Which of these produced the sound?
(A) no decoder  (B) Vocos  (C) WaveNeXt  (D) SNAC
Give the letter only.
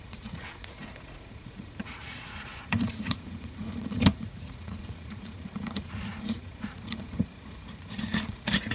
B